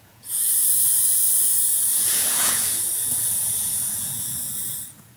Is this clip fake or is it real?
fake